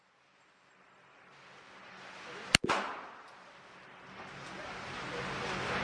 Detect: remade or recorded recorded